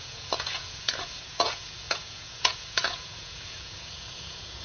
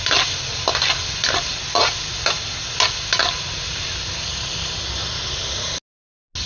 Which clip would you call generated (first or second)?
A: first